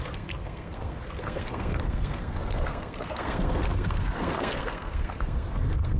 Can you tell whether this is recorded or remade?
remade